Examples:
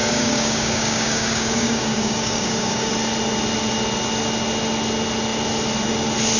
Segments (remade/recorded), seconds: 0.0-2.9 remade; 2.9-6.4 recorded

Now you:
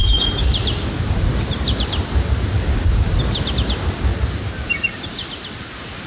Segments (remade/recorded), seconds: 0.0-6.1 recorded

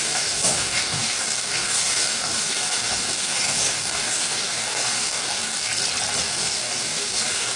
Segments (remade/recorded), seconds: 0.0-5.7 remade; 5.7-6.2 recorded; 6.2-7.6 remade

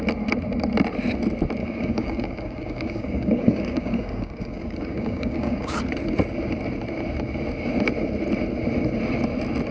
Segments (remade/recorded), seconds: 0.0-1.6 recorded; 1.6-5.8 remade; 5.8-9.7 recorded

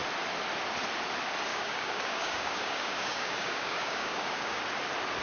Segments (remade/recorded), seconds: 0.0-1.5 recorded; 1.5-4.6 remade; 4.6-5.2 recorded

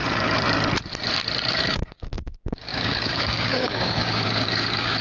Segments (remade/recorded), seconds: 0.0-1.5 recorded; 1.5-5.0 remade

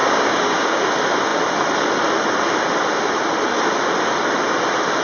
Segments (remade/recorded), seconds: 0.0-0.8 remade; 0.8-5.0 recorded

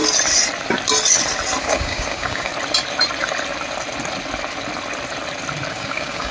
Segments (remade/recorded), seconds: 0.0-1.6 recorded; 1.6-2.5 remade; 2.5-5.7 recorded; 5.7-6.3 remade